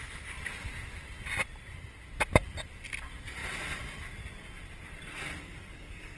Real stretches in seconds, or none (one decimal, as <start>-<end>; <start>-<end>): 0.0-5.4